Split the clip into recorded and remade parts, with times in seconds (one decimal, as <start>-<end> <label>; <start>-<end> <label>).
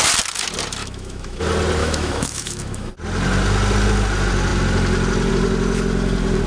0.0-0.8 recorded; 0.8-1.4 remade; 1.4-1.8 recorded; 1.8-2.9 remade; 2.9-6.5 recorded